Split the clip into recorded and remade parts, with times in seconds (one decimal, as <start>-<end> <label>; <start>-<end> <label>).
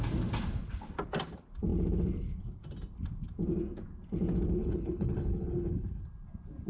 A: 0.0-4.6 recorded; 4.6-6.0 remade; 6.0-6.7 recorded